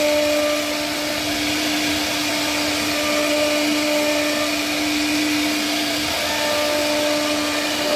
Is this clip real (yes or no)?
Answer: yes